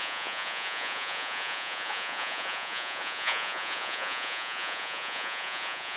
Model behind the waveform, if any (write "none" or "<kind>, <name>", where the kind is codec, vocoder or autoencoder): vocoder, Vocos